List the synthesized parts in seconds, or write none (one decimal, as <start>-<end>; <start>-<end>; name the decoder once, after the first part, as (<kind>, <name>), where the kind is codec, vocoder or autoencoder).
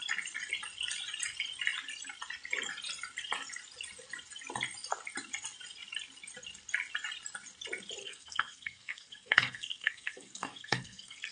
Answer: 8.0-11.3 (codec, SNAC)